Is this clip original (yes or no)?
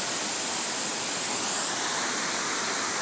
yes